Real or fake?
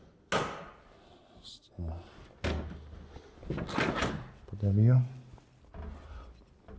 real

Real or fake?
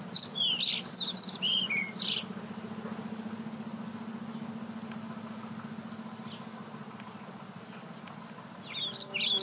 real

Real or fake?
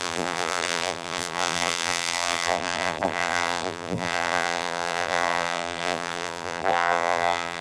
fake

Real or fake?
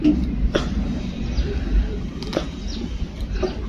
fake